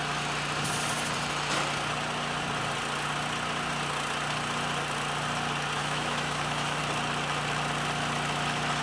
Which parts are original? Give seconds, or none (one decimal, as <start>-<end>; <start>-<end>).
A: 0.0-5.8; 6.8-8.8